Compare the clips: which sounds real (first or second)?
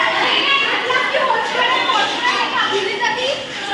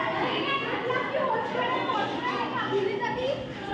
second